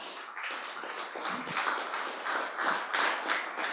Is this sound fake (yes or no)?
no